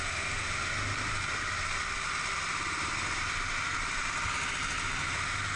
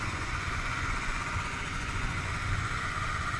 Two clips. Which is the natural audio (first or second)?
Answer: first